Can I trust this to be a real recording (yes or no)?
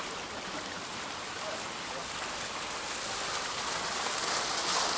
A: yes